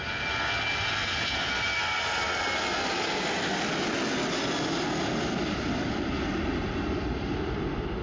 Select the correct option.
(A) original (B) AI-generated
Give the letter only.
A